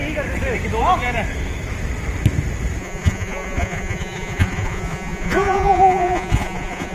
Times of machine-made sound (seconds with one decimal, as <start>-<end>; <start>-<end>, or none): 2.8-6.9